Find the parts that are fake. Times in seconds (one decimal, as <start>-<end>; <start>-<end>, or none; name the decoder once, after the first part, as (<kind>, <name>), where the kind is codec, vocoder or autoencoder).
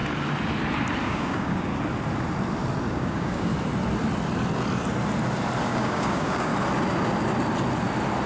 1.0-1.7 (codec, DAC); 2.9-3.5; 5.6-6.5